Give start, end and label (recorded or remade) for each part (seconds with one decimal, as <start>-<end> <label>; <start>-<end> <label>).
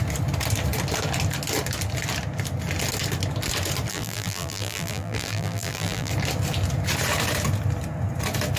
0.0-3.9 recorded; 3.9-6.1 remade; 6.1-8.6 recorded